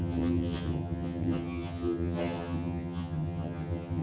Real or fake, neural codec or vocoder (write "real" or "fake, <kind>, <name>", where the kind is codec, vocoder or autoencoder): fake, vocoder, HiFi-GAN